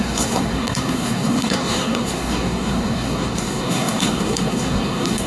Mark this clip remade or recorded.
remade